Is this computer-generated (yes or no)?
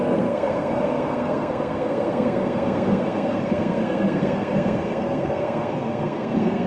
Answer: yes